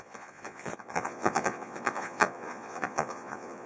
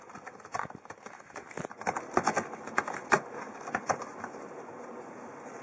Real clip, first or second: second